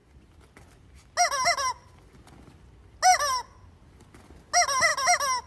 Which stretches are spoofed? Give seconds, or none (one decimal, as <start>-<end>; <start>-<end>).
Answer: 3.1-4.0